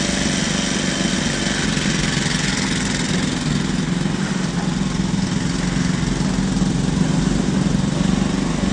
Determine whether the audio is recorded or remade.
recorded